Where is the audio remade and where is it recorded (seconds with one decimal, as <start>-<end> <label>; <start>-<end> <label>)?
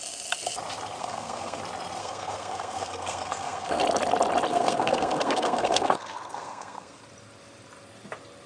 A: 0.0-1.0 recorded; 1.0-1.6 remade; 1.6-2.0 recorded; 2.0-3.8 remade; 3.8-4.5 recorded; 4.5-7.0 remade; 7.0-8.5 recorded